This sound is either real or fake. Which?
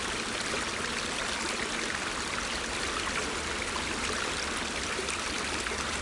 real